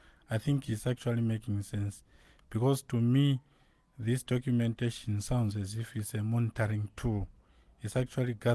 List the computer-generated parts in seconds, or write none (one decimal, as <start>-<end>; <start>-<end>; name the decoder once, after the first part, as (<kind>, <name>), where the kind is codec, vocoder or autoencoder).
none

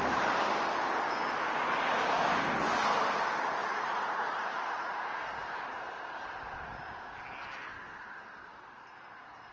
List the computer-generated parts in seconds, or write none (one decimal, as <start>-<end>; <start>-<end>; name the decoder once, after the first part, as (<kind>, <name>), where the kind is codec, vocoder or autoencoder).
3.6-5.3 (vocoder, Vocos)

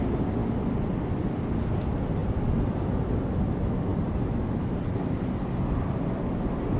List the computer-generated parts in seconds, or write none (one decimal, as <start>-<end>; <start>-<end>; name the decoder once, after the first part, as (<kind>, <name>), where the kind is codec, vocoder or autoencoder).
none

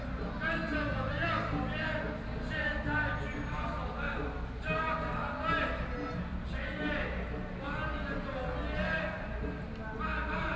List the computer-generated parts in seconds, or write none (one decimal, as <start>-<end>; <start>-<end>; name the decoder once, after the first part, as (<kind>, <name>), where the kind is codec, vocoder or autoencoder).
none

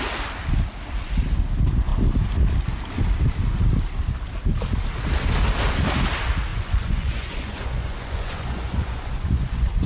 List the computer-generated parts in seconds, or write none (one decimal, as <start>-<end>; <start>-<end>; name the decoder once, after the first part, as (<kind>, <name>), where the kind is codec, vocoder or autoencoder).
6.5-9.9 (vocoder, Vocos)

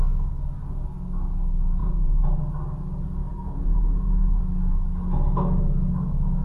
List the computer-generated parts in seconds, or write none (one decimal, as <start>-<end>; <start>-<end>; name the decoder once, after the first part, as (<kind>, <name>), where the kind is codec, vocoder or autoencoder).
1.8-2.4 (vocoder, Vocos); 3.2-4.4

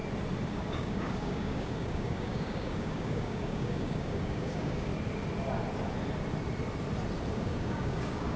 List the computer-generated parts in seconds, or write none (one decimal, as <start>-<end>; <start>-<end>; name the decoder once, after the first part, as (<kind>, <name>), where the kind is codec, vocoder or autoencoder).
0.5-4.9 (codec, DAC); 7.3-8.4

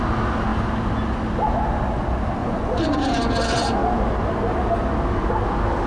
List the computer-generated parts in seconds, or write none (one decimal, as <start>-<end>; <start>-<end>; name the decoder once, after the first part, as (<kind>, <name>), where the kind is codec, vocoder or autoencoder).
2.4-3.0 (vocoder, Vocos)